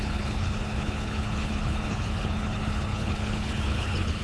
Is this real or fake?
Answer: fake